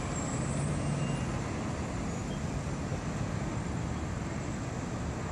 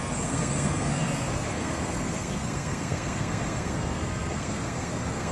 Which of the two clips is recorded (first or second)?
first